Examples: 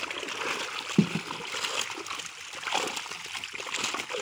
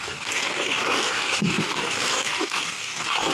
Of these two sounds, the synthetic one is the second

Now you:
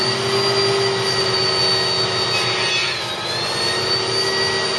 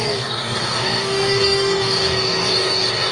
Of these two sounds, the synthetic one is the second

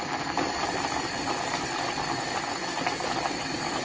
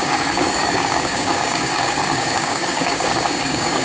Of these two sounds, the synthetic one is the second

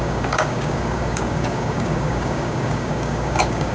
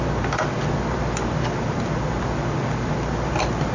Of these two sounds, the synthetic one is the first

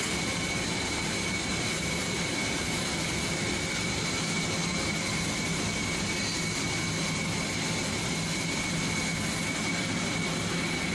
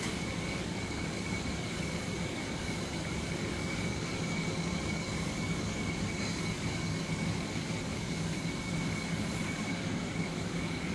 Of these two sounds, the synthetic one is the second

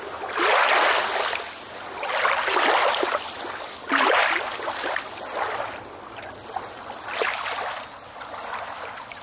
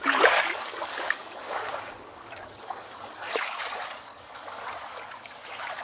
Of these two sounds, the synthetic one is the second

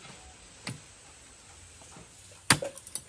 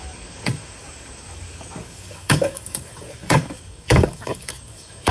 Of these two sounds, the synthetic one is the second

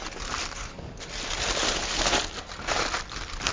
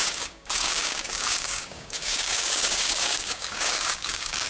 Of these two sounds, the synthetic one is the second